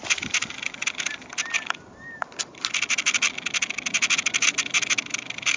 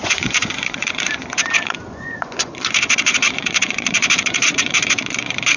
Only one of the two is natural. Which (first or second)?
first